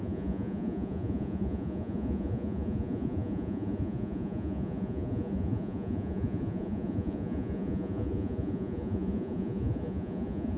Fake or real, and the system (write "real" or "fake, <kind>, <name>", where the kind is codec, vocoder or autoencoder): fake, vocoder, Vocos